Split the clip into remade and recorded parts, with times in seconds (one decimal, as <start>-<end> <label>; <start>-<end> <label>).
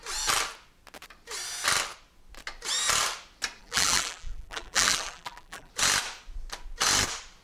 0.0-3.6 recorded; 3.6-5.7 remade; 5.7-7.4 recorded